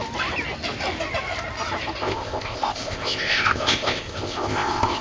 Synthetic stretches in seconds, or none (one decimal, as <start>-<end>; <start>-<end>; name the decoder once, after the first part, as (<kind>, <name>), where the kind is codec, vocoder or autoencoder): 2.0-5.0 (codec, ZipCodec)